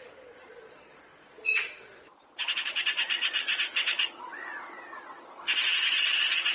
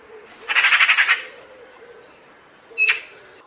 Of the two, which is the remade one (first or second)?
first